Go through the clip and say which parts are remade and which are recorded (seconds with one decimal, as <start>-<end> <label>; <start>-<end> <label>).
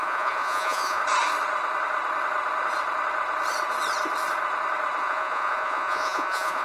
0.0-1.0 remade; 1.0-5.0 recorded; 5.0-6.6 remade